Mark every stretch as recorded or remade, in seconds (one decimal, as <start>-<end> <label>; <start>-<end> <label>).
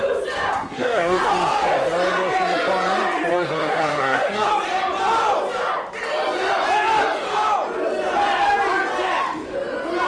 0.0-0.5 recorded; 0.5-1.3 remade; 1.3-3.3 recorded; 3.3-4.5 remade; 4.5-10.1 recorded